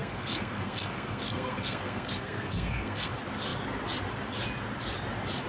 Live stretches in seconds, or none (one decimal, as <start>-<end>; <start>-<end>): 3.1-5.5